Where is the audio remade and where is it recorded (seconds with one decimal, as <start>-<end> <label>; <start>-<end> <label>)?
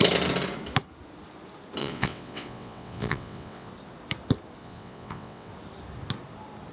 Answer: 0.0-1.8 recorded; 1.8-3.7 remade; 3.7-4.6 recorded; 4.6-5.5 remade; 5.5-6.7 recorded